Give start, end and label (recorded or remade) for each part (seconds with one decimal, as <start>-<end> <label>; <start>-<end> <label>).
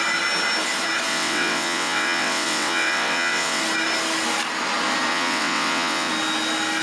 0.0-1.1 recorded; 1.1-3.6 remade; 3.6-5.1 recorded; 5.1-6.1 remade; 6.1-6.8 recorded